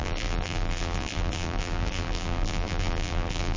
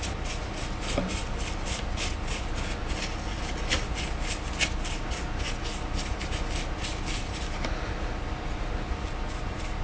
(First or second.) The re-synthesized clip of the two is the first